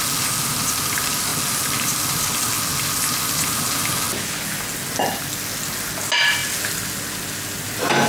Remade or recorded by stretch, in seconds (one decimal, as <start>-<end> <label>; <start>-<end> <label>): 0.0-8.1 recorded